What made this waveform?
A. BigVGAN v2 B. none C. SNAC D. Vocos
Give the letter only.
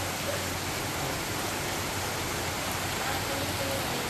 B